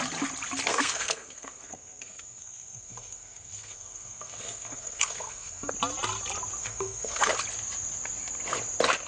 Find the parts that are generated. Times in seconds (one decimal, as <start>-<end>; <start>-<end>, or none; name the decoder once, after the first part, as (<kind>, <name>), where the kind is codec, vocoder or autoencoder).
0.7-5.7 (codec, SNAC); 6.6-7.3